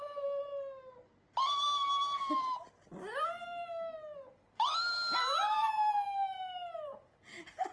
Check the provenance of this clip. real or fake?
real